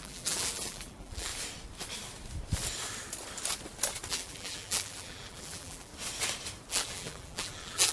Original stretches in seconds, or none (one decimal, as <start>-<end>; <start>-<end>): 1.3-4.1; 5.9-6.7

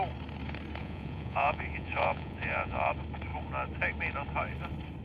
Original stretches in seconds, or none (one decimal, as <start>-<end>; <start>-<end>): 0.0-0.8; 2.9-5.0

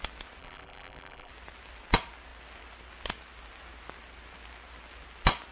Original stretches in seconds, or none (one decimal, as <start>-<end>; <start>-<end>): 0.0-0.4; 1.3-5.5